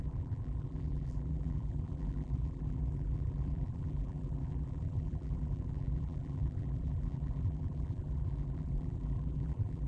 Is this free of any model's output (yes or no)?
no